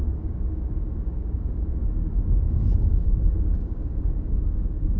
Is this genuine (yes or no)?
no